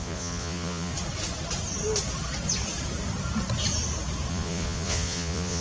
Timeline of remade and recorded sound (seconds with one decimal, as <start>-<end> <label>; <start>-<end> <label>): 0.0-0.9 remade; 0.9-4.3 recorded; 4.3-5.6 remade

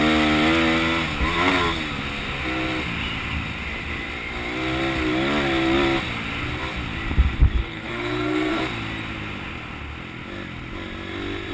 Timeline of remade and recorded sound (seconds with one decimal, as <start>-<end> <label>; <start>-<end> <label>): 0.0-7.6 recorded; 7.6-8.6 remade; 8.6-11.5 recorded